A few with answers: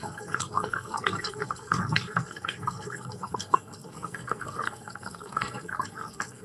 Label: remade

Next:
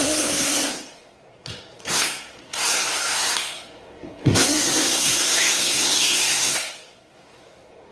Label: remade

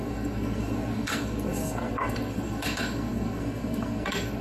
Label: remade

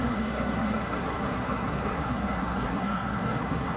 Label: remade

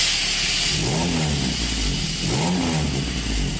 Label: recorded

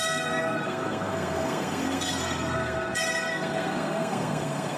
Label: remade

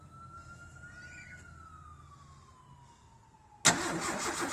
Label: recorded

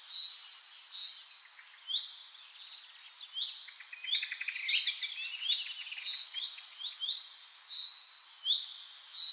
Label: recorded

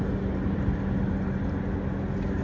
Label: recorded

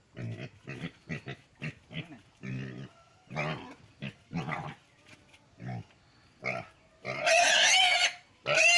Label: recorded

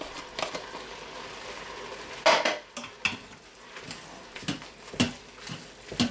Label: recorded